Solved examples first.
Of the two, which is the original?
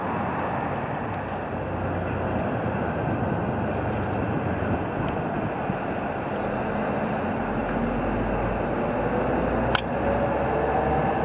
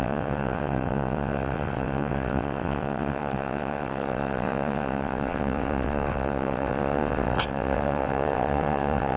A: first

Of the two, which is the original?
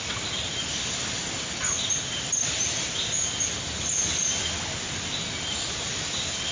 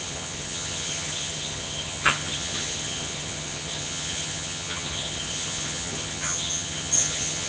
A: first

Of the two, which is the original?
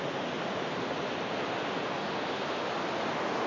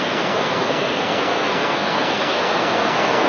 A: first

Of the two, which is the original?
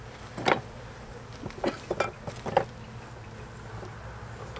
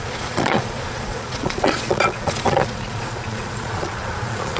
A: first